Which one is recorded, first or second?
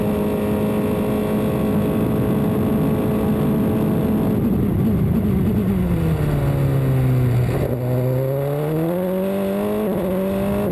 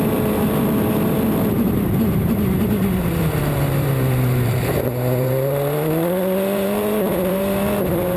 first